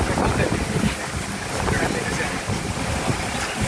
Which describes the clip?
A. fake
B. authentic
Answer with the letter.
B